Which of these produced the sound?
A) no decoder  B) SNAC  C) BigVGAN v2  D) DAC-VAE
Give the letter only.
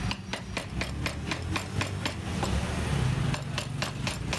A